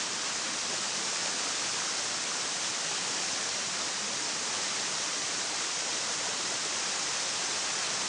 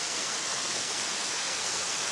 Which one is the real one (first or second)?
first